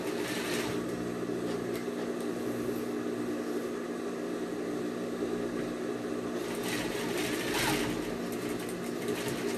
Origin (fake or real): real